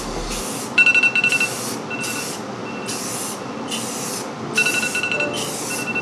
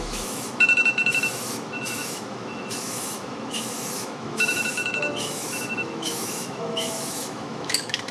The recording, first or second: first